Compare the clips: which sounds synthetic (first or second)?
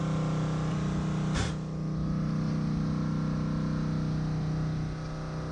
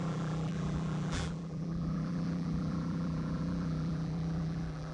second